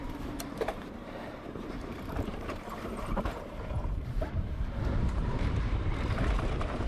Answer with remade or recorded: remade